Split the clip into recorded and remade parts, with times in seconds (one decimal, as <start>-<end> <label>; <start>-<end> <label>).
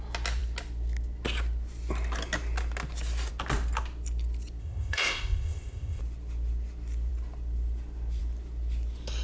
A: 0.0-4.6 recorded; 4.6-6.0 remade; 6.0-9.2 recorded